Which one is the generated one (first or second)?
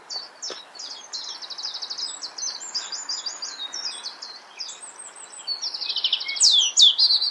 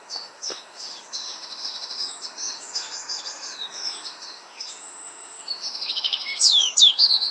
second